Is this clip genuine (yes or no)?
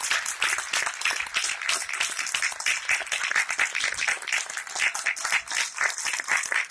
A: yes